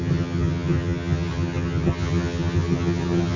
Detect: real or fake fake